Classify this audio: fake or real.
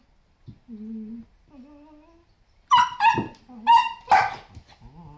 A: real